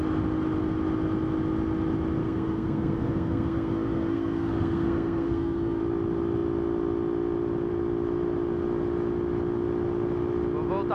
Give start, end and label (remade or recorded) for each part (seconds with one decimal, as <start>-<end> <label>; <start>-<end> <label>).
0.0-2.2 recorded; 2.2-5.8 remade; 5.8-10.9 recorded